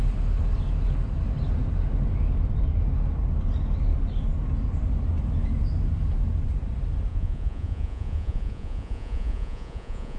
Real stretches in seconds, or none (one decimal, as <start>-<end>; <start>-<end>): 0.0-7.1